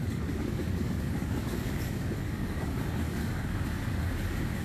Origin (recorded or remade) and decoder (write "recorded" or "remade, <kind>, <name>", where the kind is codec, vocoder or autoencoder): remade, codec, DAC